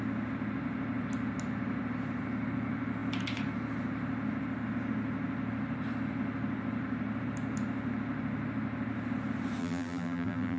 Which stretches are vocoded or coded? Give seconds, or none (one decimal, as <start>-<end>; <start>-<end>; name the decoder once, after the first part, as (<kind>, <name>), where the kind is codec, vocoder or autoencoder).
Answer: 9.6-10.6 (vocoder, BigVGAN v2)